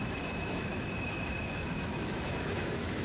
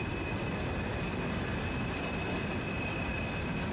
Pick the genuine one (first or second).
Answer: second